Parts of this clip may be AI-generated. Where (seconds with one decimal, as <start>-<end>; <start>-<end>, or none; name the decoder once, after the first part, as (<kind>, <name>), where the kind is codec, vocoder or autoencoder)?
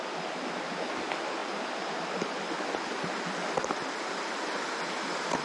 none